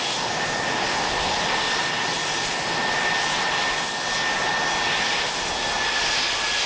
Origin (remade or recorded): recorded